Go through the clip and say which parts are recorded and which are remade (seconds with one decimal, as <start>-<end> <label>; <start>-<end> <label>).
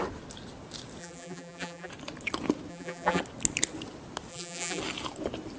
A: 0.0-1.0 recorded; 1.0-1.9 remade; 1.9-2.7 recorded; 2.7-3.2 remade; 3.2-4.3 recorded; 4.3-4.8 remade; 4.8-5.6 recorded